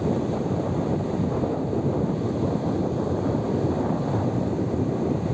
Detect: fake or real real